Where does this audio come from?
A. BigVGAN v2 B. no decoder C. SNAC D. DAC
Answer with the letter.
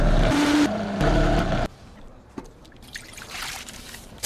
A